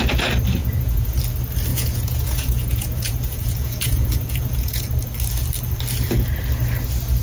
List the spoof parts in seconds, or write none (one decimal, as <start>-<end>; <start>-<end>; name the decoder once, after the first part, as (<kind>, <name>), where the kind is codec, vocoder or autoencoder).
0.6-1.2 (vocoder, Vocos); 1.7-4.8